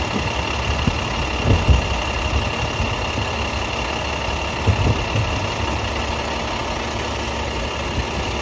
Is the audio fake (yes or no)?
no